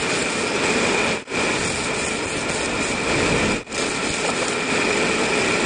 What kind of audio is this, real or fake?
real